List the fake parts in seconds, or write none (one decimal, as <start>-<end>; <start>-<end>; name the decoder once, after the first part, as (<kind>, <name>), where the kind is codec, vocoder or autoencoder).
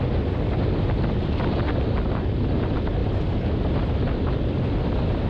none